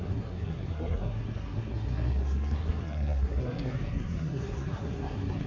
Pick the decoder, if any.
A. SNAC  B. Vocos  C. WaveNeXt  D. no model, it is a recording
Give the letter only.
A